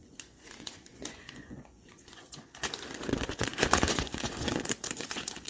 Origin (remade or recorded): remade